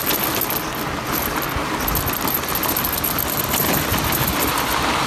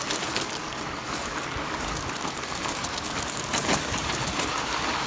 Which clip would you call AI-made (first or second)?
second